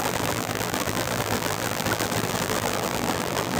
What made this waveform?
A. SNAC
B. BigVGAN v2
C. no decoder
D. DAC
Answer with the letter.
B